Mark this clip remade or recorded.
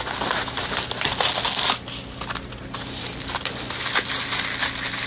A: recorded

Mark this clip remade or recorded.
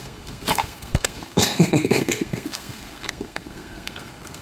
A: remade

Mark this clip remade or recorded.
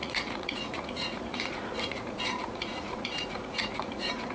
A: remade